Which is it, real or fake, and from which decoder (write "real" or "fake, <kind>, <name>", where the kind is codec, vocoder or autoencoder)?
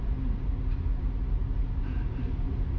fake, vocoder, BigVGAN v2